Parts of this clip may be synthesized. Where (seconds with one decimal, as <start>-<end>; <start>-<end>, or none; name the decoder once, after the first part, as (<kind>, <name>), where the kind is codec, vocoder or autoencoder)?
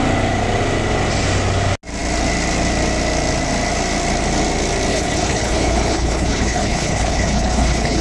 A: 4.9-8.0 (codec, HILCodec)